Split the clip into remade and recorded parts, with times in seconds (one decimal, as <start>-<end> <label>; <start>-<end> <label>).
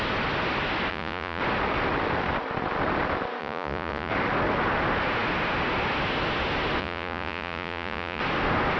0.0-0.9 recorded; 0.9-1.4 remade; 1.4-3.4 recorded; 3.4-4.1 remade; 4.1-6.8 recorded; 6.8-8.2 remade; 8.2-8.8 recorded